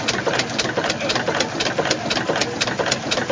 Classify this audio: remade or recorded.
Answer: recorded